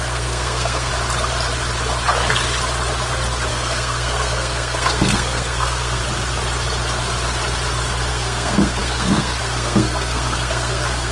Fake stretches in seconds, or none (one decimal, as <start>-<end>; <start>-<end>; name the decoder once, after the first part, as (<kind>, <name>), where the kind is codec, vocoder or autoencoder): 0.0-0.9 (codec, SNAC); 3.5-6.0; 8.1-11.1